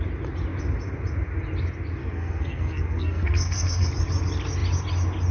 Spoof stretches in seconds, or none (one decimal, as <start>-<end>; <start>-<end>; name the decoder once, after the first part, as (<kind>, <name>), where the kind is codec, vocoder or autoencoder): 2.0-3.9 (codec, SNAC)